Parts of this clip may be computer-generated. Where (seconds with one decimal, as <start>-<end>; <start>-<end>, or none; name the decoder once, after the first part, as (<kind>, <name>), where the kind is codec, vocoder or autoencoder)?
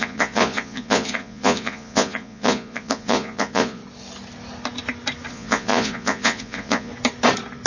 0.0-3.8 (vocoder, Vocos); 5.3-6.9